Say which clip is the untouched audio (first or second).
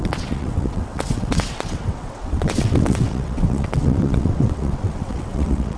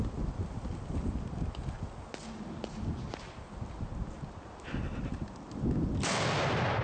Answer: second